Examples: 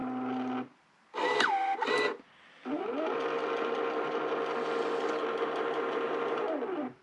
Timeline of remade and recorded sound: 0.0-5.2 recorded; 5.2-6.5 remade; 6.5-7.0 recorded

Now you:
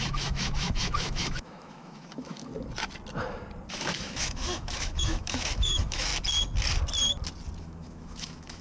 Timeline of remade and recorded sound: 0.0-2.5 remade; 2.5-3.7 recorded; 3.7-6.1 remade; 6.1-7.6 recorded; 7.6-8.6 remade

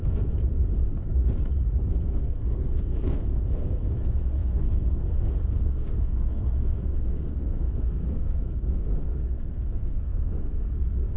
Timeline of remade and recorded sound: 0.0-0.4 remade; 0.4-1.9 recorded; 1.9-11.2 remade

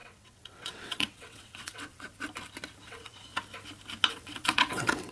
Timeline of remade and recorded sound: 0.0-2.1 remade; 2.1-2.8 recorded; 2.8-3.3 remade; 3.3-4.1 recorded; 4.1-5.1 remade

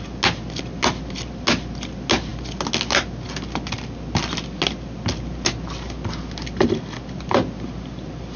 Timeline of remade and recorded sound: 0.0-8.4 recorded

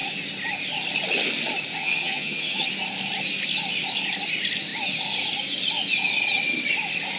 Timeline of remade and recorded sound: 0.0-1.8 recorded; 1.8-2.7 remade; 2.7-7.2 recorded

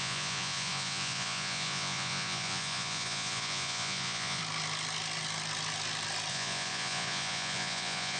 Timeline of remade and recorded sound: 0.0-4.4 remade; 4.4-6.3 recorded; 6.3-8.2 remade

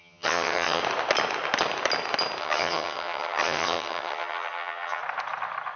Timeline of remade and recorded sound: 0.0-0.8 remade; 0.8-2.4 recorded; 2.4-5.0 remade; 5.0-5.8 recorded